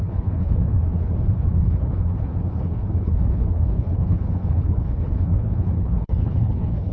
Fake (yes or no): yes